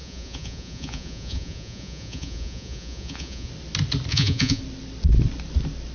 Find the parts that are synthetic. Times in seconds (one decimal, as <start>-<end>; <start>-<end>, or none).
0.0-3.5; 4.1-4.6